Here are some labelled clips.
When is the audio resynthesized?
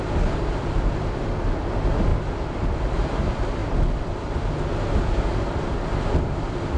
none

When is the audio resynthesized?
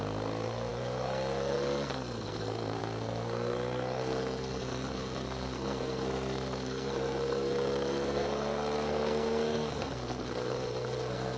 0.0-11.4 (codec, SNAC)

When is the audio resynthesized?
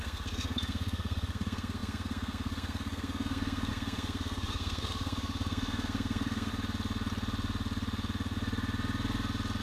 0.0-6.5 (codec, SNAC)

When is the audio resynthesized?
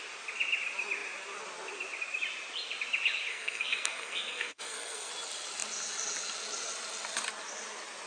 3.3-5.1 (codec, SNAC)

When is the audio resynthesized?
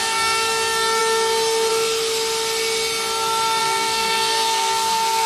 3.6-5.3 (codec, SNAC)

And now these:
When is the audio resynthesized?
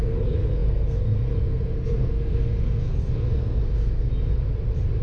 0.0-4.1 (codec, SNAC)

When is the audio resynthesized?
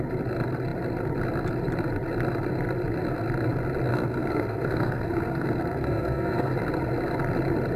3.9-6.5 (codec, SNAC)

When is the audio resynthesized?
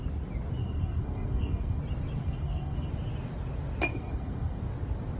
0.6-1.8 (codec, SNAC); 2.2-2.9; 3.9-4.6